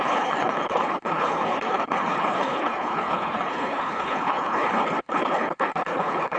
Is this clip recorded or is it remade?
remade